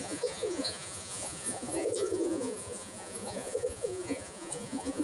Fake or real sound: fake